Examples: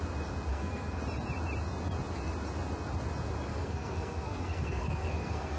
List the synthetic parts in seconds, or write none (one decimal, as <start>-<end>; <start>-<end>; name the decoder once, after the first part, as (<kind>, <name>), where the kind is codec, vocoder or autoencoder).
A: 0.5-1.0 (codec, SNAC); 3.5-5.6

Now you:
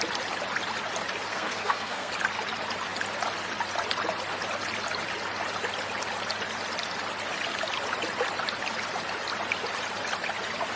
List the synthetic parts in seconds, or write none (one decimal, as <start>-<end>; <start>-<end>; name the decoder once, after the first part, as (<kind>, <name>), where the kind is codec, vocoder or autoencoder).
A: 1.3-2.1 (codec, SNAC)

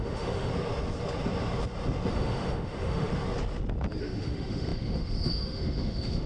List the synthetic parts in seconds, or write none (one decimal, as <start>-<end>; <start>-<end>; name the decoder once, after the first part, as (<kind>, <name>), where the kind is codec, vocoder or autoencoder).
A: 0.0-0.5 (autoencoder, DAC-VAE); 2.1-3.1; 4.0-6.3